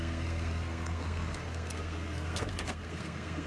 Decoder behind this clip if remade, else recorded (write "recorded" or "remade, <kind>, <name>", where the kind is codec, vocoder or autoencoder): remade, codec, SNAC